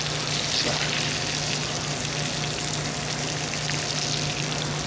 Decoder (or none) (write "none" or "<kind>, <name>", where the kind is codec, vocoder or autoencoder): none